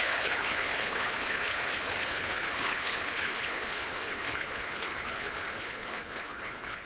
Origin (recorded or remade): remade